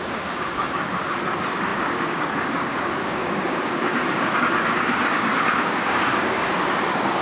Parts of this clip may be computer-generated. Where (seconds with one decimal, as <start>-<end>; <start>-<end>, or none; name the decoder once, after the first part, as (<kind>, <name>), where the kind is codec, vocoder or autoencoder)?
0.0-7.2 (codec, DAC)